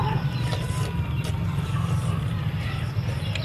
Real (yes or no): yes